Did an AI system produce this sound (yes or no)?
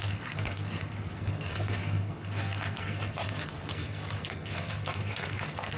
yes